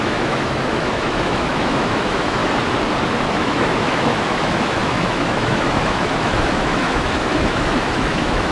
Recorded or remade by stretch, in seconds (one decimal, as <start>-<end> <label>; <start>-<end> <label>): 0.0-2.4 remade; 2.4-3.3 recorded; 3.3-8.5 remade